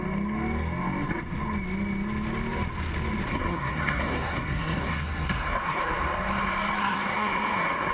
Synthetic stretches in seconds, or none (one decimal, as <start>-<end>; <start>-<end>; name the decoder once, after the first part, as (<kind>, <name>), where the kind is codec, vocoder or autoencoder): 3.3-5.8 (codec, SNAC); 6.8-7.9